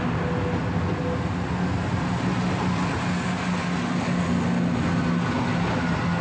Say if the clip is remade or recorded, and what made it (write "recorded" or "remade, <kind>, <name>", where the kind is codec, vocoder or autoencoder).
recorded